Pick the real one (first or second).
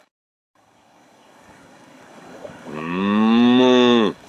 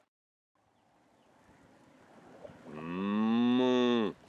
second